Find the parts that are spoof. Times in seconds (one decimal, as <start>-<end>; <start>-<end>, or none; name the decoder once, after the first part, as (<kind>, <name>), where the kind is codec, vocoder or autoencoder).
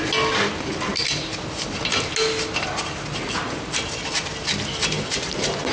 none